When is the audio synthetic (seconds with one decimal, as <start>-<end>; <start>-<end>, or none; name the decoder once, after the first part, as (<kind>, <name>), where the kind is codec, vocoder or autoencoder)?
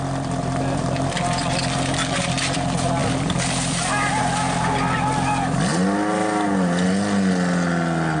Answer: none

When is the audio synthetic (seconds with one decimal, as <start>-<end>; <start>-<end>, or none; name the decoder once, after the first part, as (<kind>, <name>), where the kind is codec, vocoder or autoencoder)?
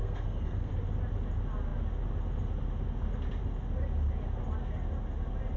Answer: 0.0-0.7 (codec, SNAC)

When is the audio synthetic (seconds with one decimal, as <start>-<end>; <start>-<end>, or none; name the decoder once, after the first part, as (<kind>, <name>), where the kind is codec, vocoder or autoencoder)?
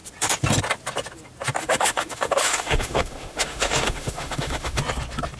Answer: 1.6-4.8 (autoencoder, DAC-VAE)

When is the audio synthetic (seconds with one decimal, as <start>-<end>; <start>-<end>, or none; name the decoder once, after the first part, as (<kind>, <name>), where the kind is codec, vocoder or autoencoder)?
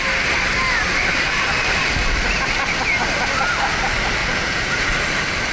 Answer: 4.2-4.9 (vocoder, Vocos)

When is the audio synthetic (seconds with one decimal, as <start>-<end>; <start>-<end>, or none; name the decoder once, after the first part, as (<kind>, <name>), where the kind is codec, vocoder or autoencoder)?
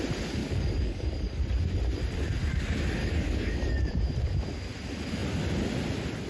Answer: 0.4-1.4 (codec, DAC); 3.0-3.9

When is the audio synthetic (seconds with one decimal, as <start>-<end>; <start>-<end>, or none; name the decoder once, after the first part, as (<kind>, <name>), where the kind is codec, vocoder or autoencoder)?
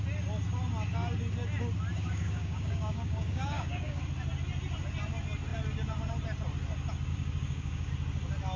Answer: 1.9-4.0 (codec, DAC); 7.1-7.9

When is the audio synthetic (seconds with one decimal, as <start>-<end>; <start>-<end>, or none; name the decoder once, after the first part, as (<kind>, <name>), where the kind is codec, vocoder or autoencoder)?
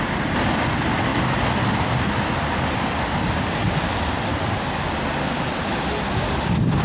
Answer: none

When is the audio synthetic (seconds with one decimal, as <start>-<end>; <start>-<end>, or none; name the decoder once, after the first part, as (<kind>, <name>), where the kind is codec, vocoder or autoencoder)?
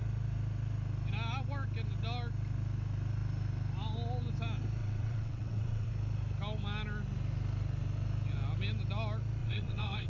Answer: 4.8-5.9 (vocoder, WaveNeXt); 9.4-10.1